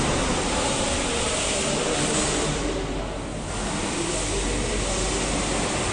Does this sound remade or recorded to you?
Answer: recorded